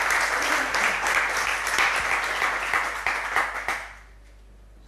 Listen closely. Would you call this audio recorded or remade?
recorded